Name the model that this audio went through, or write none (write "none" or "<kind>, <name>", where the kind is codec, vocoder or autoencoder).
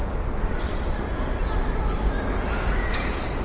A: none